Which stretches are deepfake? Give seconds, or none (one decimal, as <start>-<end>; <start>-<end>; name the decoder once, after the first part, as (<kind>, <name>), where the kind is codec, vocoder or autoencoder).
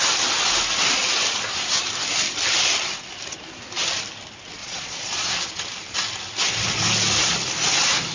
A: 4.6-5.3 (vocoder, Vocos)